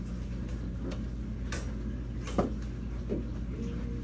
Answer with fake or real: real